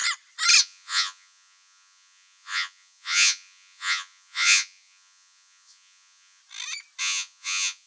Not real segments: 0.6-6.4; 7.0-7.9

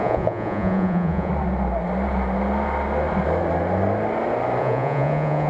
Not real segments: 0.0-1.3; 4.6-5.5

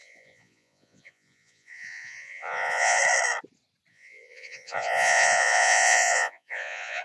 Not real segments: 0.0-3.0; 3.9-7.0